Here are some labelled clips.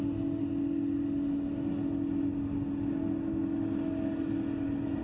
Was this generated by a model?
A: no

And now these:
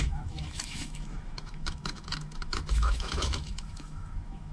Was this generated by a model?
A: yes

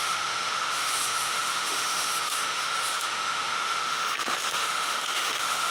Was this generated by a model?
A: yes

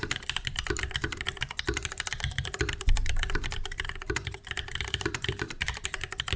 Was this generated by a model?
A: no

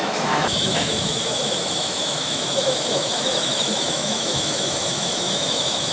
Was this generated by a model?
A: yes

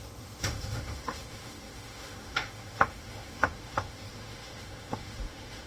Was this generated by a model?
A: yes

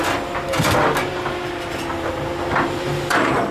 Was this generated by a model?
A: no